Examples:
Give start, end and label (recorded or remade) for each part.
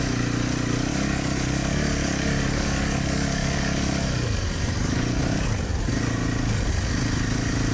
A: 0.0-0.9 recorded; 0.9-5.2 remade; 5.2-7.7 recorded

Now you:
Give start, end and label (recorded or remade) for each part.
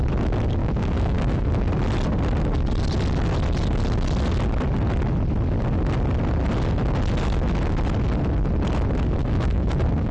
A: 0.0-0.6 recorded; 0.6-1.7 remade; 1.7-9.2 recorded; 9.2-10.1 remade